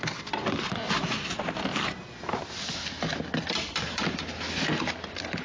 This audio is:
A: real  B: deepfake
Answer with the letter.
A